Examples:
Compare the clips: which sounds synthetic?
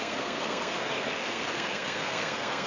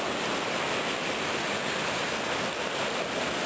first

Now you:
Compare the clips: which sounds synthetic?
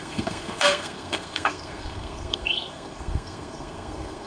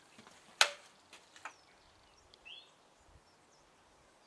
first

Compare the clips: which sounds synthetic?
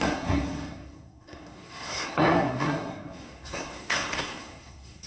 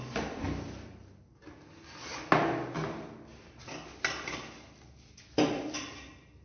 first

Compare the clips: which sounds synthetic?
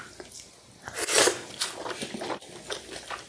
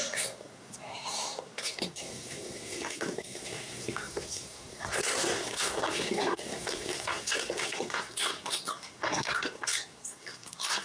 second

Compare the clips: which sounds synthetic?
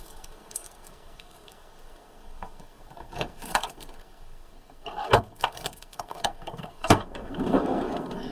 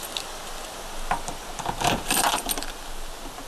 first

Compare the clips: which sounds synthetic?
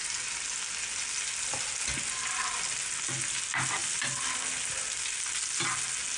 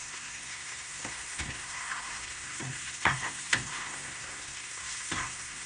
second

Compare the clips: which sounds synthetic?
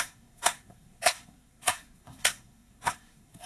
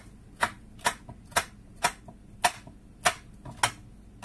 first